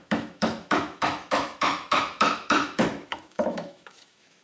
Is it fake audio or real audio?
fake